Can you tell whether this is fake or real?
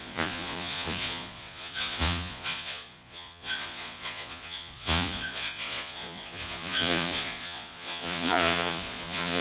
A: fake